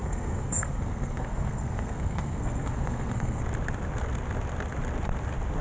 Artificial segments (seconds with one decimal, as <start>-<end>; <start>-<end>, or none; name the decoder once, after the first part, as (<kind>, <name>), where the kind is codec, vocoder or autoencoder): 0.0-3.4 (codec, SNAC)